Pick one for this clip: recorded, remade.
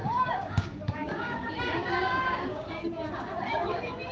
remade